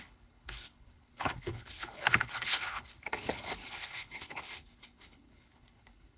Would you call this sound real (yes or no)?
no